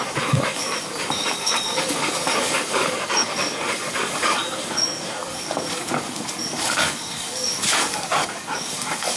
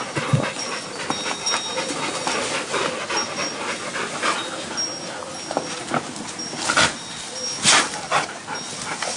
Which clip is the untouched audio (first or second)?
second